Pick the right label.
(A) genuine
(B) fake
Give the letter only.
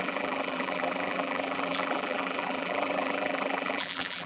B